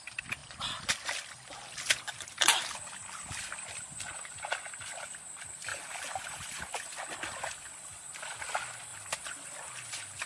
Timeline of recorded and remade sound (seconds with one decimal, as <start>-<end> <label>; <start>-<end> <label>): 0.0-5.7 recorded; 5.7-6.7 remade; 6.7-8.9 recorded; 8.9-9.6 remade; 9.6-10.3 recorded